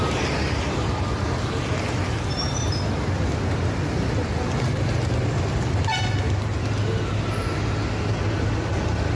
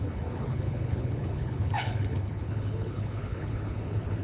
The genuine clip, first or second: first